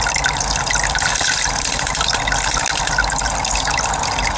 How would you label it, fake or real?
real